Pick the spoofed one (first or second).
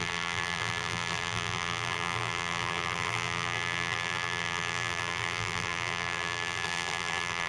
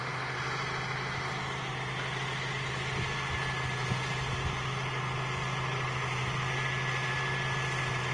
first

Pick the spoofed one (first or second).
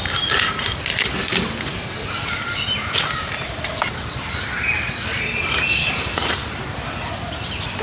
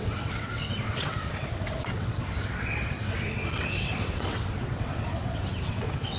second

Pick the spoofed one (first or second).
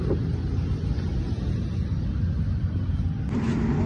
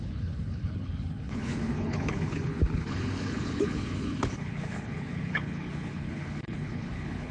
second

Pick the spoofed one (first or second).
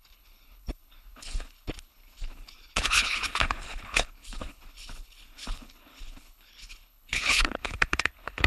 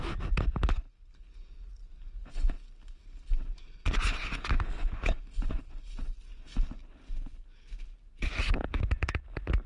first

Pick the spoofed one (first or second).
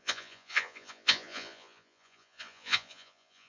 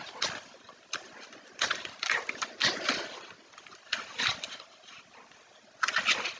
first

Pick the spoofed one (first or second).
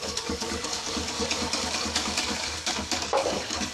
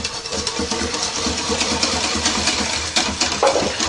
first